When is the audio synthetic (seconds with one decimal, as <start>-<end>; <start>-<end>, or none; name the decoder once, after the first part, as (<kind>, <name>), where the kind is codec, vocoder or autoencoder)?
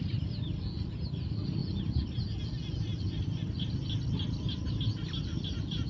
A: none